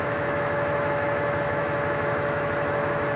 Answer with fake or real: fake